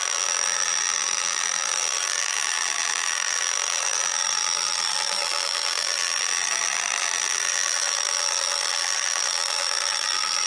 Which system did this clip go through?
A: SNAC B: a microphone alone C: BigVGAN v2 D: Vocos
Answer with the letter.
C